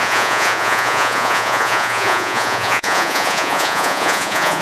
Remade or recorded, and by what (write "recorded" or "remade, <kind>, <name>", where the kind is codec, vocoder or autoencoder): remade, vocoder, Vocos